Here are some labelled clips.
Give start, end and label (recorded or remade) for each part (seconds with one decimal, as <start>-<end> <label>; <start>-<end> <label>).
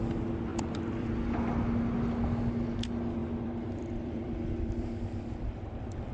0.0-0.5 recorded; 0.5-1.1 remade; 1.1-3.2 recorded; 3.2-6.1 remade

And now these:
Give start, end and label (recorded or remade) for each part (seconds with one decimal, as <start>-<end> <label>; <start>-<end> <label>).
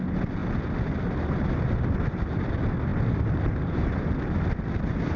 0.0-5.2 recorded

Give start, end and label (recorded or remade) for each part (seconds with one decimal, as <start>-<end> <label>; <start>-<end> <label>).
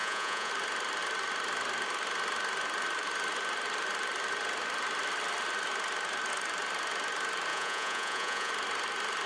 0.0-0.5 remade; 0.5-7.5 recorded; 7.5-8.5 remade; 8.5-9.3 recorded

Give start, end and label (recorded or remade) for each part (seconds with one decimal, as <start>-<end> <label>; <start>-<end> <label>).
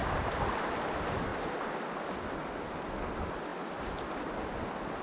0.0-5.0 recorded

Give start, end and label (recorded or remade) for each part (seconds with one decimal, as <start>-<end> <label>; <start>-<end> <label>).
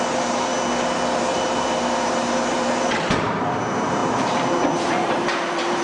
0.0-0.5 remade; 0.5-1.2 recorded; 1.2-5.8 remade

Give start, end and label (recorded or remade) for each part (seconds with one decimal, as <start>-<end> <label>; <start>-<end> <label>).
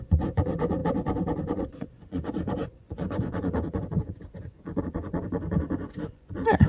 0.0-6.7 remade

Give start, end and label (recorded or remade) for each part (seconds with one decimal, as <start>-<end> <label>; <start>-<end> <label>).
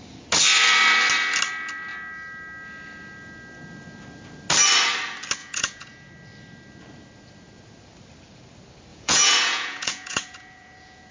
0.0-5.4 recorded; 5.4-6.1 remade; 6.1-8.9 recorded; 8.9-11.1 remade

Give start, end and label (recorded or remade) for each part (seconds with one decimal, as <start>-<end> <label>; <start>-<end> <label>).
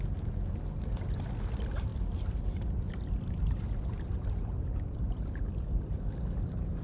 0.0-6.8 recorded